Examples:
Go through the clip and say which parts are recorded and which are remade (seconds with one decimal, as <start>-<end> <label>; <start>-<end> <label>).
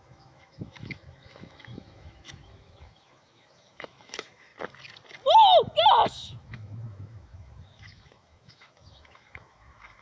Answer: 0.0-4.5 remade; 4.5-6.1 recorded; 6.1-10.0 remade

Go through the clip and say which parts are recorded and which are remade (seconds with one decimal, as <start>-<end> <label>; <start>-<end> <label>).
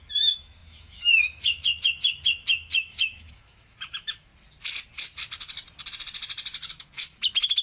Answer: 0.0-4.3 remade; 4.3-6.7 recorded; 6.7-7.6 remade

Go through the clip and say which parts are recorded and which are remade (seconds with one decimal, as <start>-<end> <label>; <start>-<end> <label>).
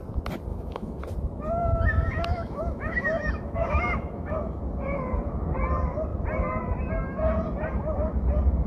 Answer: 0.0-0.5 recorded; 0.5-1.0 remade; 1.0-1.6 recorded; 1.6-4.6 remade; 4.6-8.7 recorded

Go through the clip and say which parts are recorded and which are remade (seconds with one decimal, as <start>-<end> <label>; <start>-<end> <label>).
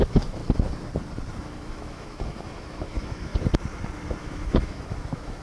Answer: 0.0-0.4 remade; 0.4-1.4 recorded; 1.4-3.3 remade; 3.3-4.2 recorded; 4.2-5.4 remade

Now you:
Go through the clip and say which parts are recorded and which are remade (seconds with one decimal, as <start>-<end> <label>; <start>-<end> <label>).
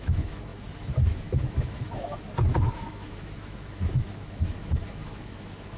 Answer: 0.0-5.8 remade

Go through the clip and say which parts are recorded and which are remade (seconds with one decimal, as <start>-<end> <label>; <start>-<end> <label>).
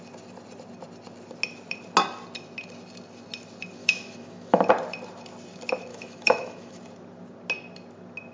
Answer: 0.0-3.8 recorded; 3.8-4.6 remade; 4.6-5.9 recorded; 5.9-6.8 remade; 6.8-8.3 recorded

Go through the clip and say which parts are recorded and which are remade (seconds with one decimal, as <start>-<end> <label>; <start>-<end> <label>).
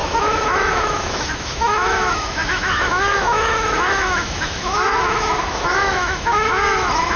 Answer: 0.0-7.2 remade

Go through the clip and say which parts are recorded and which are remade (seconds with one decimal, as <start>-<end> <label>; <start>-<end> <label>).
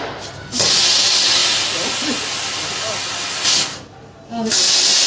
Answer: 0.0-5.1 recorded